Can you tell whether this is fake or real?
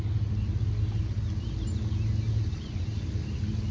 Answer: real